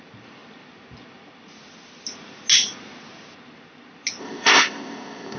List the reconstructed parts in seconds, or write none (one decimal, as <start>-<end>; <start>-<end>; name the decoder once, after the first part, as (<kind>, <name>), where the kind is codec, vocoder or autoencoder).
4.2-5.4 (codec, ZipCodec)